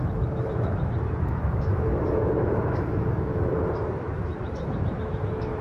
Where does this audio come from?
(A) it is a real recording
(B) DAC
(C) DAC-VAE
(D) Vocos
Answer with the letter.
C